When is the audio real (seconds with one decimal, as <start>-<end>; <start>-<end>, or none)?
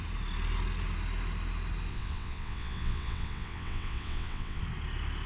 0.0-1.9; 4.6-5.3